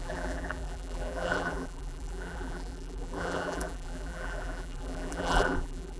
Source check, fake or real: fake